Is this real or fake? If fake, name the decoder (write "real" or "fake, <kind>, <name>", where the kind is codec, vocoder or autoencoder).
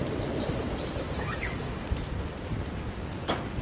real